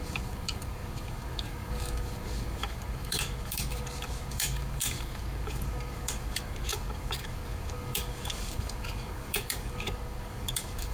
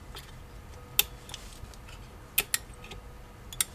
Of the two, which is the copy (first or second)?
first